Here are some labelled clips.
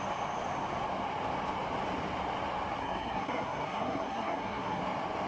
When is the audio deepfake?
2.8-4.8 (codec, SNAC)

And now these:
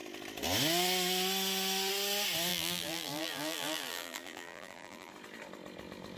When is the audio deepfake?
2.5-5.1 (vocoder, BigVGAN v2)